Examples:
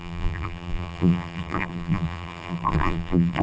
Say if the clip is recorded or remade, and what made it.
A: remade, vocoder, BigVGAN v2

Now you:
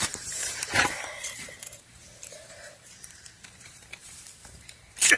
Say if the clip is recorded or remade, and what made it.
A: remade, vocoder, BigVGAN v2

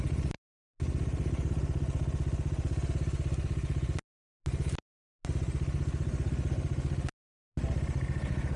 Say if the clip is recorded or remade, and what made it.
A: recorded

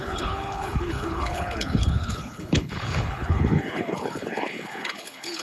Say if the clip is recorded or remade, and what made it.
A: remade, codec, HILCodec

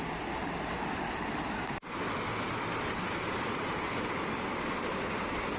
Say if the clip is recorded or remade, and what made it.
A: recorded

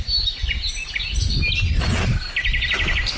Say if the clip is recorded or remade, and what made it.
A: recorded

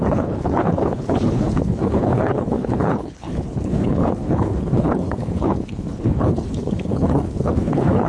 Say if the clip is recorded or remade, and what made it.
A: remade, codec, HILCodec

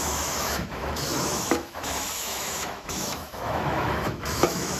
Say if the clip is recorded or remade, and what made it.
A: remade, autoencoder, DAC-VAE